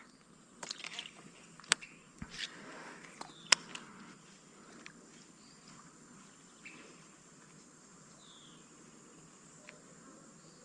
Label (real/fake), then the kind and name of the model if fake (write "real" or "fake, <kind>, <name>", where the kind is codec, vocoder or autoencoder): real